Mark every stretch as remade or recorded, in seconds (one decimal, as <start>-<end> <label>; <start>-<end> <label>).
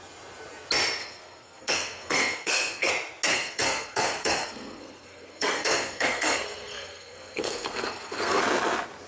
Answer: 0.0-1.0 recorded; 1.0-2.9 remade; 2.9-3.3 recorded; 3.3-8.4 remade; 8.4-9.1 recorded